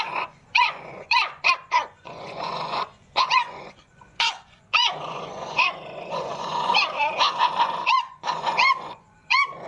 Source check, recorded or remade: remade